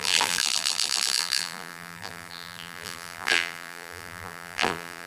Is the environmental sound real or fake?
fake